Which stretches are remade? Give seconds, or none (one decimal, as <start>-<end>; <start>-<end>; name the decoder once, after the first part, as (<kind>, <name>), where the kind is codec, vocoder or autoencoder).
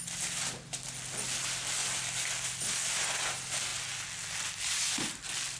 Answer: none